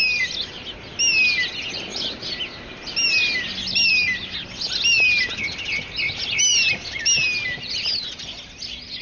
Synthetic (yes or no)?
no